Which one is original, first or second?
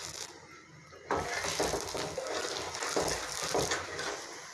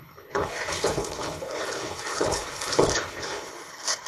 first